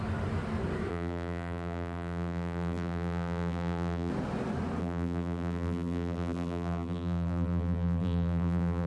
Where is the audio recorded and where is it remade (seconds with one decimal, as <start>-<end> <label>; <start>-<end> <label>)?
0.0-0.9 recorded; 0.9-4.1 remade; 4.1-4.8 recorded; 4.8-8.9 remade